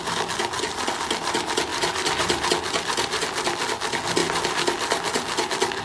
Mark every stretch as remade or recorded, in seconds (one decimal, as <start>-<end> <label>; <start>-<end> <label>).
0.0-1.7 recorded; 1.7-2.5 remade; 2.5-5.8 recorded